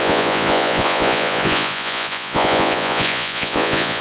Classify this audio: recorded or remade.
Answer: remade